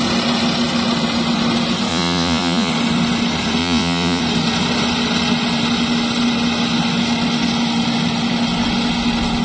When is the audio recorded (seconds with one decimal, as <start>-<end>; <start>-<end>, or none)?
0.0-1.9; 2.7-3.6; 4.2-9.4